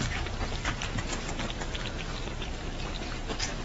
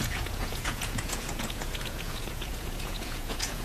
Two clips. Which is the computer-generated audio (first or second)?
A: second